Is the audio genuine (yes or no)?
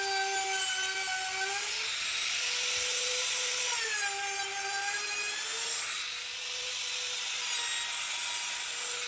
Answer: yes